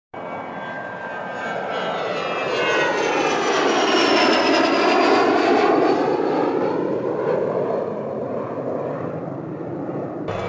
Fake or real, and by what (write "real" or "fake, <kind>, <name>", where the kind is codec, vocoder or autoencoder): real